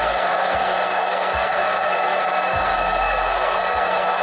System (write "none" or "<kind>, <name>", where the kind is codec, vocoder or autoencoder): codec, SNAC